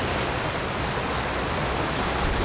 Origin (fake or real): real